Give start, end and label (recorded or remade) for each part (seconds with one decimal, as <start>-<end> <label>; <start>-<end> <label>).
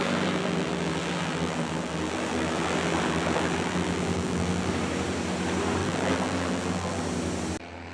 0.0-4.7 remade; 4.7-5.8 recorded; 5.8-7.0 remade; 7.0-7.9 recorded